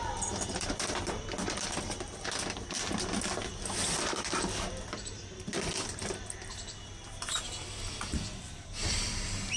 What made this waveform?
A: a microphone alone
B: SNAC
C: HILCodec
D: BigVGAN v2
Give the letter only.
D